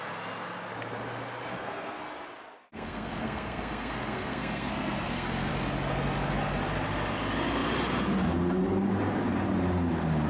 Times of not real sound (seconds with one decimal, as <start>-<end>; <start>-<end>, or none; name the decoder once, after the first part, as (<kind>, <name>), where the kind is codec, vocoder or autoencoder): 1.5-2.0 (codec, SNAC); 2.6-5.5